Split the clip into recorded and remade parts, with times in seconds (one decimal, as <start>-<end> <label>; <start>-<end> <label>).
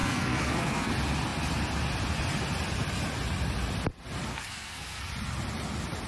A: 0.0-0.9 remade; 0.9-4.3 recorded; 4.3-5.1 remade; 5.1-6.1 recorded